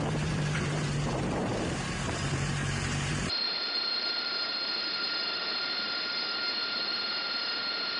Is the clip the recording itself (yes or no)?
no